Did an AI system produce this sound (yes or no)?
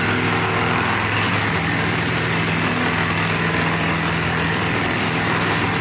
no